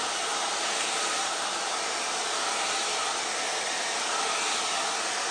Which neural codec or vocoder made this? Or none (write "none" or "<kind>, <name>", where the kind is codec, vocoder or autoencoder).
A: none